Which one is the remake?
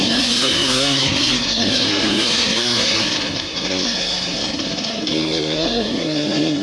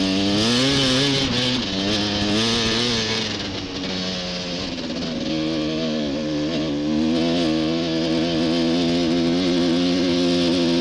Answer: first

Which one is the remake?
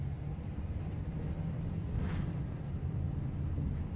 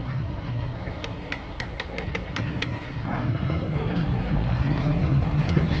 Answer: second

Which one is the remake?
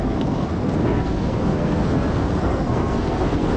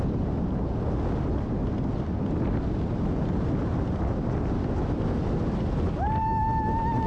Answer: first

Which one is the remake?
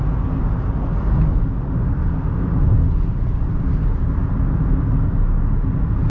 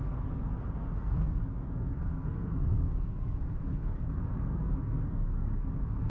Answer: second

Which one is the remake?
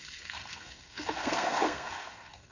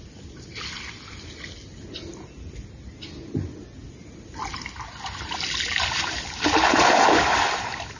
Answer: first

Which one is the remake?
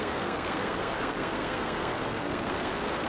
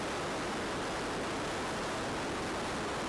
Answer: first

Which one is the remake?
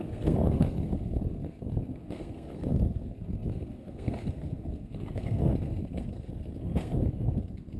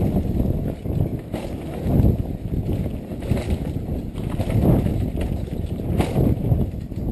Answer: first